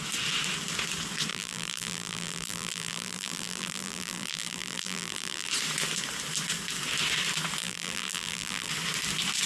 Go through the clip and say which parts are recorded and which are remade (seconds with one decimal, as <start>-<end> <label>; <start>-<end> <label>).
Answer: 0.0-1.3 recorded; 1.3-5.5 remade; 5.5-7.6 recorded; 7.6-8.7 remade; 8.7-9.5 recorded